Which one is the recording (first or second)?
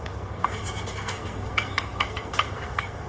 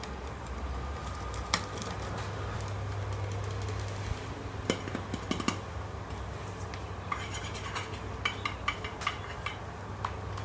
second